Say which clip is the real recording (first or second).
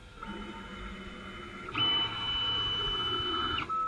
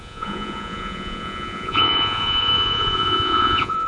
first